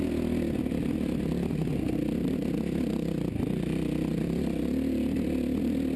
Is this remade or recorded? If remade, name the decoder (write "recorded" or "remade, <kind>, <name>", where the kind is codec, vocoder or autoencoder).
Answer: recorded